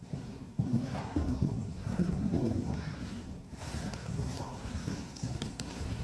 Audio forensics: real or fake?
fake